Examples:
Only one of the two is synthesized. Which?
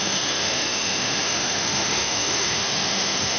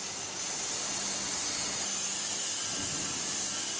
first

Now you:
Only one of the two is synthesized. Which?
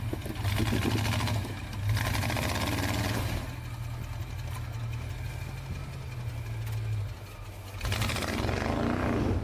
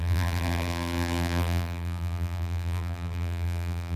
second